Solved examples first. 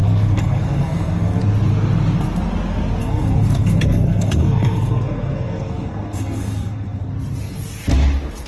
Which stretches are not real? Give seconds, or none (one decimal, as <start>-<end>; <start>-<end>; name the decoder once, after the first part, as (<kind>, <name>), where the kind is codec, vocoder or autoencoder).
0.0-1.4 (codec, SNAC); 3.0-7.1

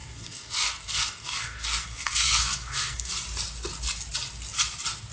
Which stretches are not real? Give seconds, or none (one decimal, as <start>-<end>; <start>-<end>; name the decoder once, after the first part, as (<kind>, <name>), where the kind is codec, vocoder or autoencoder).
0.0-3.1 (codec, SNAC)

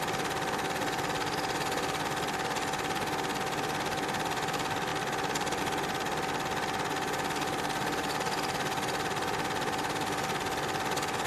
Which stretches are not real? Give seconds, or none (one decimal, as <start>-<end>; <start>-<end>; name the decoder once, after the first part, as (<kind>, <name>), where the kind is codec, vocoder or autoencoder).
none

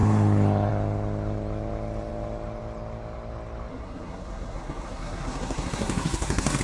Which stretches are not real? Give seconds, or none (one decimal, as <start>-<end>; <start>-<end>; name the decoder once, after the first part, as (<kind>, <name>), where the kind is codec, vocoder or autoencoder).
3.7-6.6 (codec, SNAC)

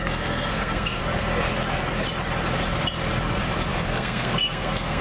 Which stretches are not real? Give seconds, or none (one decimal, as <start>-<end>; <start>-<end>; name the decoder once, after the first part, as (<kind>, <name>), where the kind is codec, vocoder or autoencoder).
0.0-1.0 (codec, SNAC); 3.7-5.0

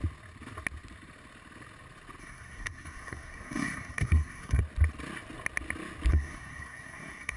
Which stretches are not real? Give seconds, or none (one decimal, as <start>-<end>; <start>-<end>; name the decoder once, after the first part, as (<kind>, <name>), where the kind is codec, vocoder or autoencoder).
2.2-4.6 (codec, SNAC); 6.1-7.4

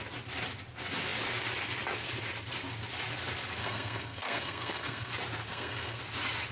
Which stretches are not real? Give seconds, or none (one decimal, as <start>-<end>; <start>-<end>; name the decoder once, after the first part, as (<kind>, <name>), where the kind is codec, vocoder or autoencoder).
3.6-5.1 (codec, SNAC); 5.5-6.0

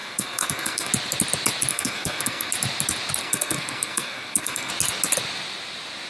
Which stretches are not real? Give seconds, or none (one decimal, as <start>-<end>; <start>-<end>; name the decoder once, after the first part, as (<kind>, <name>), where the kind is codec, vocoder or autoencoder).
0.0-0.9 (codec, SNAC); 1.7-2.5; 3.2-4.7